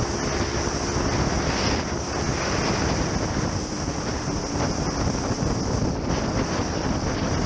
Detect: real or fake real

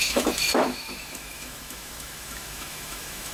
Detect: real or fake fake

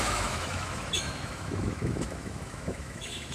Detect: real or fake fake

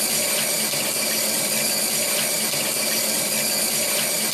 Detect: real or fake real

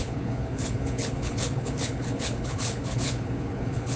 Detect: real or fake fake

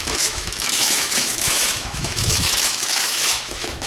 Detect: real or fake fake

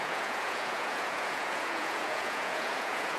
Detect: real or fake fake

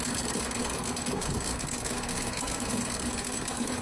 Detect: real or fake fake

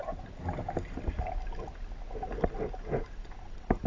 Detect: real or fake real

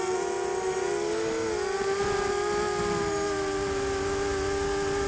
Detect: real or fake real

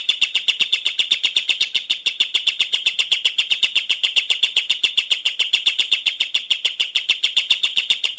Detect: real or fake fake